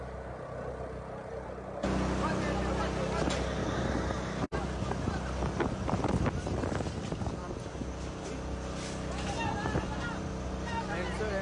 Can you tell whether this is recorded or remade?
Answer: recorded